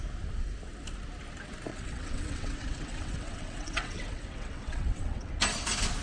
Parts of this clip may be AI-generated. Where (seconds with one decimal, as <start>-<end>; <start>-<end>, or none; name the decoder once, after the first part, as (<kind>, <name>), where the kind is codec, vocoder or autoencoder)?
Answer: 1.7-5.3 (vocoder, WaveNeXt)

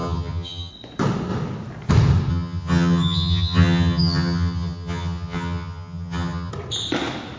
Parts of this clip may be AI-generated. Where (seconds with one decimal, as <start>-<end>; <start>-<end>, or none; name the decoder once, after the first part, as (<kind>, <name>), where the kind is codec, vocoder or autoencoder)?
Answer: 0.0-0.7 (vocoder, HiFi-GAN); 2.3-6.5